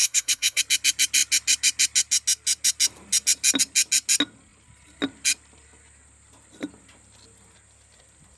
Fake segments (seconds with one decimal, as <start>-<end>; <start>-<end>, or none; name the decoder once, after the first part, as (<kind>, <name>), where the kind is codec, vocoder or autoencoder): 0.0-0.6 (codec, SNAC)